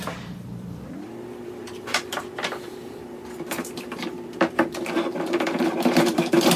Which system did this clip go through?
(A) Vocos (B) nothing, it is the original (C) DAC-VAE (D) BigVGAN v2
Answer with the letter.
D